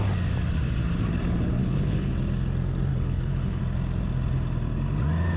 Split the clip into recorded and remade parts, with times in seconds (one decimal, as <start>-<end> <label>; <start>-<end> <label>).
0.0-1.6 recorded; 1.6-2.1 remade; 2.1-2.9 recorded; 2.9-3.6 remade; 3.6-5.4 recorded